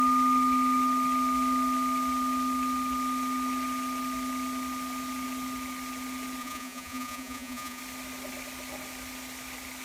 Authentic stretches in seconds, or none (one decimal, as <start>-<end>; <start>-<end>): 0.0-6.4; 7.8-9.8